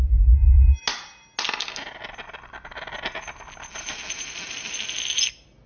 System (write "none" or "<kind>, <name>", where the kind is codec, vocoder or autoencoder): none